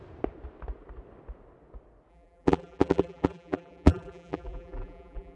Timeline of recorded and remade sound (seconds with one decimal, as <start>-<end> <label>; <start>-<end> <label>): 0.0-2.1 recorded; 2.1-5.4 remade